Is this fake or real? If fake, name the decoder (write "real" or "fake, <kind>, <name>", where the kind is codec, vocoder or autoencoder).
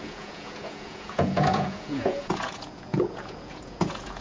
fake, vocoder, Vocos